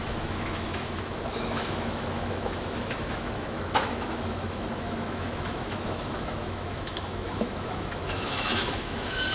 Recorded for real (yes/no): no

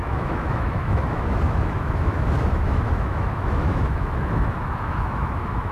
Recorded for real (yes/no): no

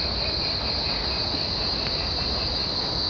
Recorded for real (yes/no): yes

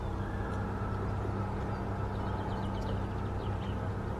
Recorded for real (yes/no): yes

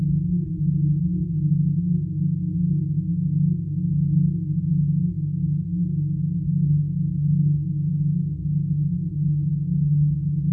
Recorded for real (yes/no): no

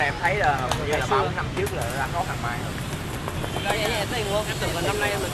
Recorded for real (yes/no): yes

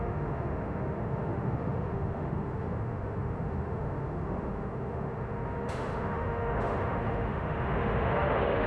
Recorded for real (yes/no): no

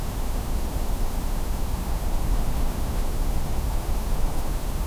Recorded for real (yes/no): no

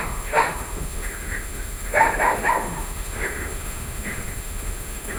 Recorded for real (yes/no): no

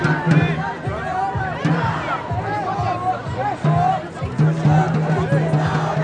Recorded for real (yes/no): yes